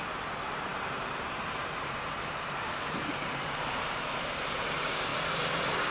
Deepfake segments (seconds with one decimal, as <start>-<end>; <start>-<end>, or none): 0.0-5.1